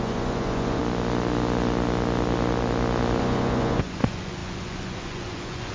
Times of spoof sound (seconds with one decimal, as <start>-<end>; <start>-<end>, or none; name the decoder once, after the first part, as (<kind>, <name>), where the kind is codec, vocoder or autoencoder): 0.0-0.8 (vocoder, Vocos); 3.2-5.7